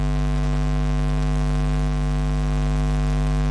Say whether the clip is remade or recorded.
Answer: recorded